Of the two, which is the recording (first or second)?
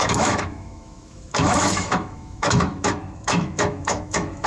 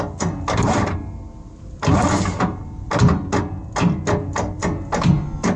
second